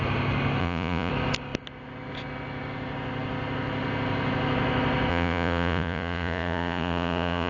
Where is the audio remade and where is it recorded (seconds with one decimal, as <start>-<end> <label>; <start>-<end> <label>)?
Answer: 0.0-0.6 recorded; 0.6-1.1 remade; 1.1-5.1 recorded; 5.1-7.5 remade